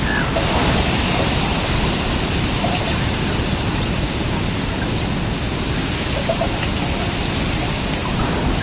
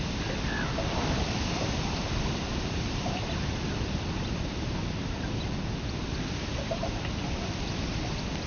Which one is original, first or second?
first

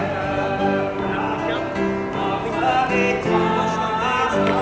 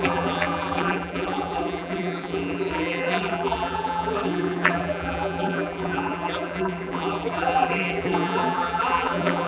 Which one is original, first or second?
first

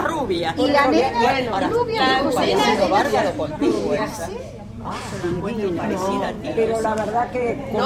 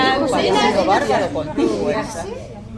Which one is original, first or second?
second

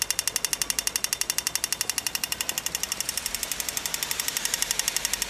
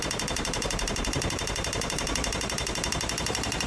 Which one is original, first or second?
first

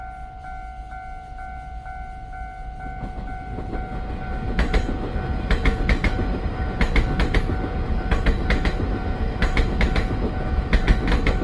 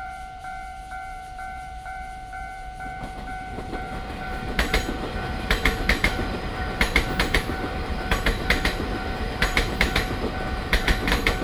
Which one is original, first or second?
first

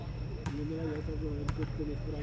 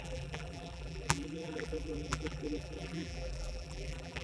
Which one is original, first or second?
first